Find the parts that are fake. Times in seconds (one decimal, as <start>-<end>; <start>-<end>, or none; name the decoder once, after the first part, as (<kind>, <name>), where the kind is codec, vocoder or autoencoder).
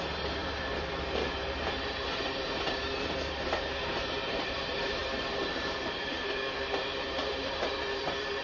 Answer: 0.0-8.4 (vocoder, BigVGAN v2)